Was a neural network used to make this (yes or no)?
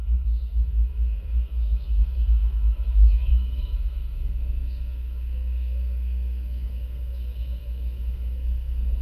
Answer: yes